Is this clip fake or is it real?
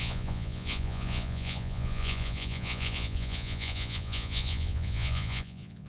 fake